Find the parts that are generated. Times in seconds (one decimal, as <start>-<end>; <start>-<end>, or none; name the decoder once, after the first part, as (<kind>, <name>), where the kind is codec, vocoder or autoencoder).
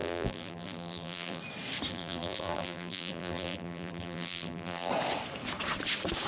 0.0-1.4 (vocoder, BigVGAN v2); 1.9-4.9